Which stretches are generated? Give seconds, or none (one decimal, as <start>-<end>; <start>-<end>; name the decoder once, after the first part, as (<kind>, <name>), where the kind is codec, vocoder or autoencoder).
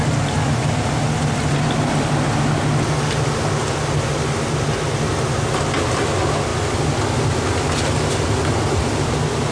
none